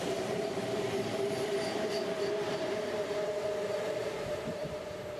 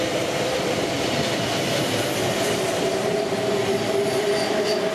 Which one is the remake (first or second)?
first